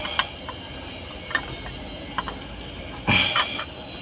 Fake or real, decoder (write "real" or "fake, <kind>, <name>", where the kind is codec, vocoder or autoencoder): real